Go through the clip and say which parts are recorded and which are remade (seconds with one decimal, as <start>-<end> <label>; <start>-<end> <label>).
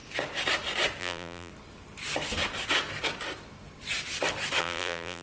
0.0-1.0 recorded; 1.0-1.5 remade; 1.5-4.6 recorded; 4.6-5.2 remade